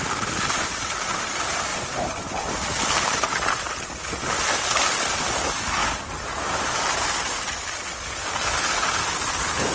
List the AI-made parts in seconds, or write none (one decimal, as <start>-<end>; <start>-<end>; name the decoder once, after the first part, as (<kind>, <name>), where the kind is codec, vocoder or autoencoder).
none